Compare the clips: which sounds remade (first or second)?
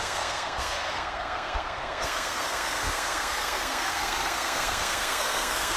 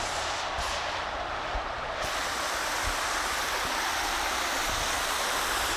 first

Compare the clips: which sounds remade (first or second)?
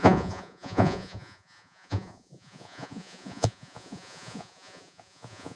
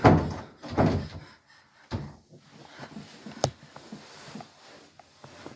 first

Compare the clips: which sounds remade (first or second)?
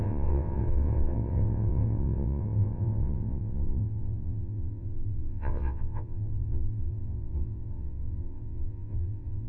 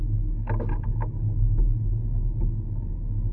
first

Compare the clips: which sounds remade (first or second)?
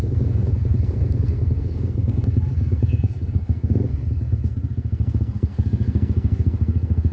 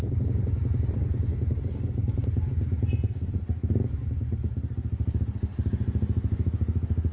first